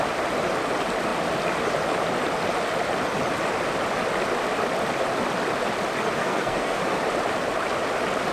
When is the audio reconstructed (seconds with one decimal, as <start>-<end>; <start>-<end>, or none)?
6.2-6.8